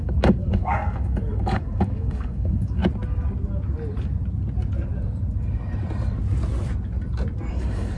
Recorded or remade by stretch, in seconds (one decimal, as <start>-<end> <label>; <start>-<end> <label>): 0.0-2.8 remade; 2.8-7.5 recorded; 7.5-8.0 remade